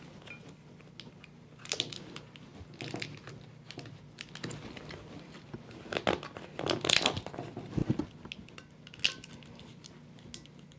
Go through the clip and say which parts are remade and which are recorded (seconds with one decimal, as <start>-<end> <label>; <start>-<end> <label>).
0.0-10.8 recorded